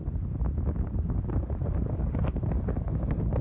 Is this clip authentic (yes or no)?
yes